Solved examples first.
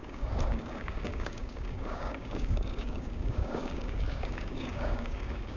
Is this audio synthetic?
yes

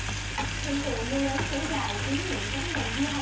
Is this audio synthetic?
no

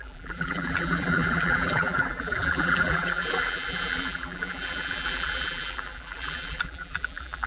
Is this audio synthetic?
yes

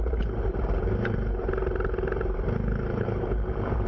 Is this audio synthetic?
yes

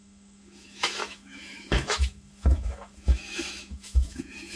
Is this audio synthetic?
yes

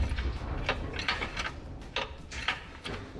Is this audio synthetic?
no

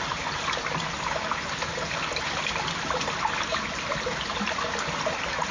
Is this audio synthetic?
no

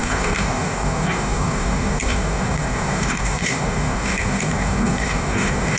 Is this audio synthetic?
yes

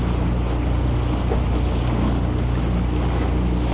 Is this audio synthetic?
no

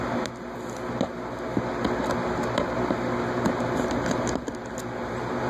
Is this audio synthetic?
no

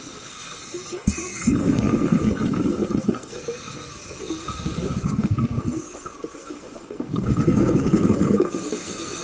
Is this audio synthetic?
yes